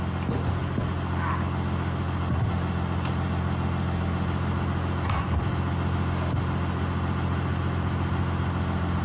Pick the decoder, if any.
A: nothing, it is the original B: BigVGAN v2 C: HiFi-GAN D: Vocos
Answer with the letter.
A